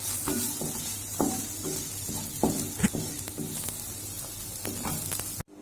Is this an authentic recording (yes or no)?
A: yes